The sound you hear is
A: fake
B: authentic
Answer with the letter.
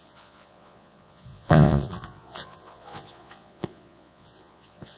A